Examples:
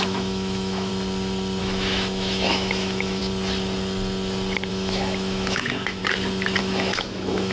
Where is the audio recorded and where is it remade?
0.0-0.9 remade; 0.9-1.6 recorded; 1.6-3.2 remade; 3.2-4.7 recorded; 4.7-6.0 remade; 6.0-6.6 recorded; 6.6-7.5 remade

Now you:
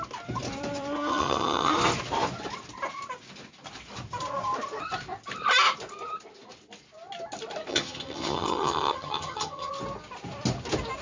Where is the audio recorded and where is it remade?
0.0-1.1 recorded; 1.1-1.7 remade; 1.7-7.7 recorded; 7.7-9.7 remade; 9.7-11.0 recorded

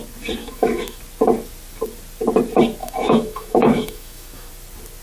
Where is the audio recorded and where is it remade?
0.0-0.4 recorded; 0.4-1.0 remade; 1.0-2.8 recorded; 2.8-4.5 remade; 4.5-5.0 recorded

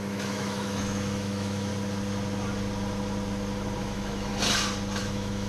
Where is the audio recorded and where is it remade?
0.0-1.7 remade; 1.7-3.8 recorded; 3.8-4.3 remade; 4.3-5.0 recorded; 5.0-5.5 remade

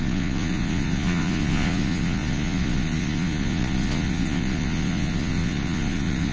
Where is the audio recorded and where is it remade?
0.0-6.3 remade

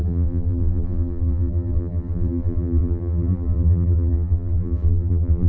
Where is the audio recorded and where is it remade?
0.0-5.5 remade